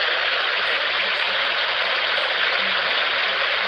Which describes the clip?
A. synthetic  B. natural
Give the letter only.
B